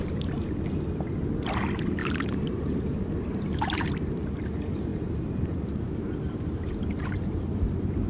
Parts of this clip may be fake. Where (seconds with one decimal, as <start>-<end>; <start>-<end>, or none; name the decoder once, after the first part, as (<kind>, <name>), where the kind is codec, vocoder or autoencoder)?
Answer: 2.0-4.2 (vocoder, BigVGAN v2); 4.9-8.1